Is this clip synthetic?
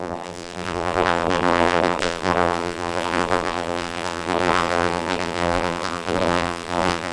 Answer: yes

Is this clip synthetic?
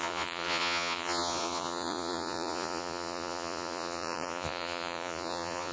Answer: yes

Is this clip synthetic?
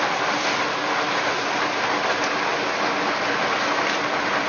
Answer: no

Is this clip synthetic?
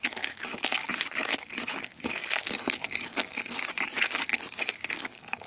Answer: yes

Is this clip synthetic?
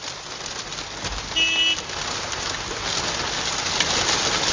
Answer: no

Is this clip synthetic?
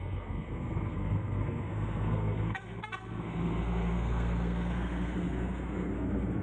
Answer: yes